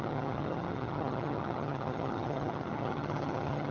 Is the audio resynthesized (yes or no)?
yes